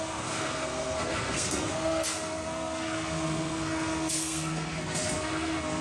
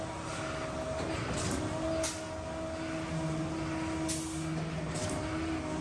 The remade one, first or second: first